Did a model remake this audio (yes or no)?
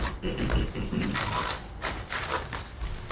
no